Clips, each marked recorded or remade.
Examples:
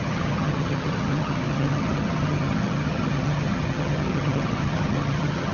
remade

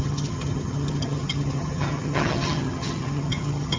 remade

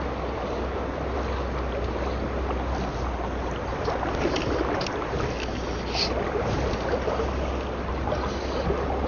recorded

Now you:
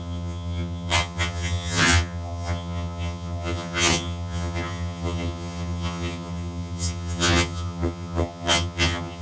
remade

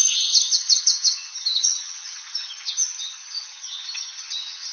remade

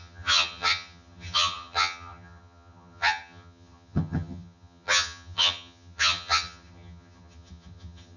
remade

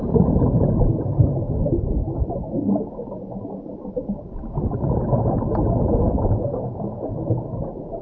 recorded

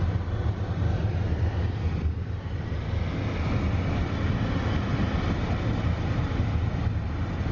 recorded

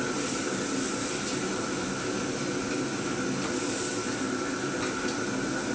recorded